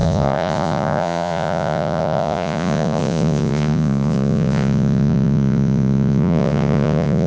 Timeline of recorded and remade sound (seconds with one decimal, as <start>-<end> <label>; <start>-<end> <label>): 0.0-7.3 remade